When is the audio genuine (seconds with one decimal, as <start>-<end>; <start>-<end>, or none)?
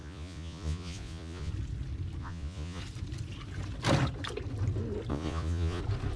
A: 1.5-2.2; 2.8-5.1; 5.8-6.2